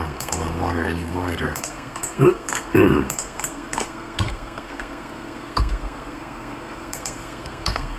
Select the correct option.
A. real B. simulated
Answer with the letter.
B